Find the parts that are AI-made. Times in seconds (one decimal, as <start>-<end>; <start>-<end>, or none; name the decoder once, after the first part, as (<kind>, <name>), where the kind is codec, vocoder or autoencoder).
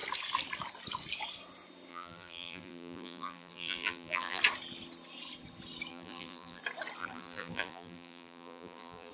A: 1.9-4.4 (vocoder, BigVGAN v2); 5.9-6.6; 7.0-9.1